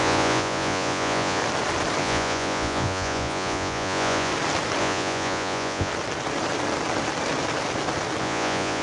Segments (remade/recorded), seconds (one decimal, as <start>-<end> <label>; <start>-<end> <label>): 0.0-1.4 remade; 1.4-2.0 recorded; 2.0-4.3 remade; 4.3-4.8 recorded; 4.8-5.9 remade; 5.9-8.2 recorded; 8.2-8.8 remade